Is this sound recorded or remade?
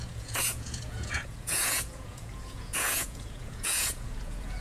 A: remade